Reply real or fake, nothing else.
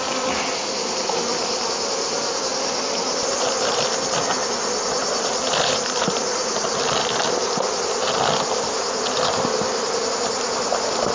real